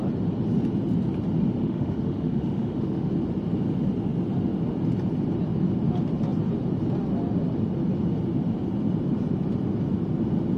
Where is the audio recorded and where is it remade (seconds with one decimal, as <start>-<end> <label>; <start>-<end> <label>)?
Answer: 0.0-1.6 recorded; 1.6-3.1 remade; 3.1-10.6 recorded

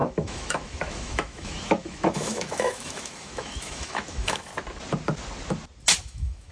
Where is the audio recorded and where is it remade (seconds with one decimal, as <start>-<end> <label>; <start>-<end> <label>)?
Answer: 0.0-4.5 remade; 4.5-6.0 recorded; 6.0-6.5 remade

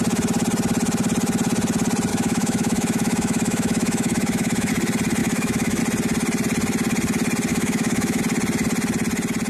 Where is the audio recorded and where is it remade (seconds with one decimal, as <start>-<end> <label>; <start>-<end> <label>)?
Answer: 0.0-2.1 recorded; 2.1-4.7 remade; 4.7-5.2 recorded; 5.2-5.8 remade; 5.8-7.5 recorded; 7.5-8.2 remade; 8.2-9.5 recorded

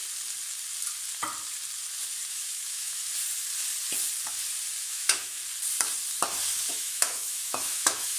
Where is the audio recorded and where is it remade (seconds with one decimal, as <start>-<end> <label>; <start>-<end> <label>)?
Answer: 0.0-2.3 recorded; 2.3-3.0 remade; 3.0-4.8 recorded; 4.8-5.4 remade; 5.4-6.7 recorded; 6.7-8.2 remade

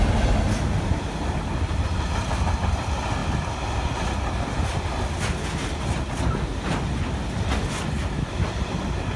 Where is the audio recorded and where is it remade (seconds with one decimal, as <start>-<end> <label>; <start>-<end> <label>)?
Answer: 0.0-9.2 recorded